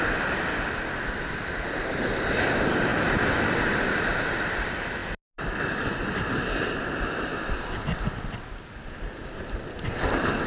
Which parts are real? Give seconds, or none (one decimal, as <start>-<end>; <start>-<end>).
0.0-10.5